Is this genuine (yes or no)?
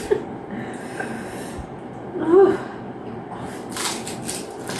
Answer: yes